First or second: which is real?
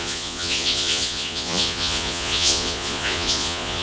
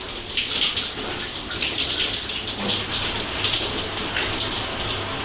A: second